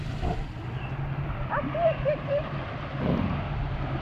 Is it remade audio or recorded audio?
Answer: recorded